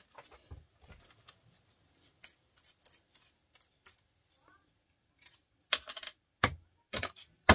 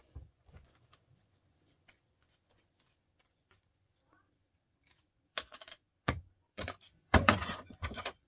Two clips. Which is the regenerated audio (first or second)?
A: second